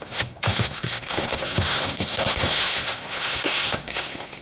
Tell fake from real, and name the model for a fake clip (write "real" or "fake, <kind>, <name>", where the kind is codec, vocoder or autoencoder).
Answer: fake, codec, SNAC